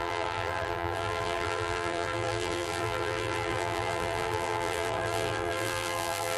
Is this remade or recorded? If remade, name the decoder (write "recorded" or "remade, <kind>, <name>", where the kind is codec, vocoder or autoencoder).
remade, vocoder, BigVGAN v2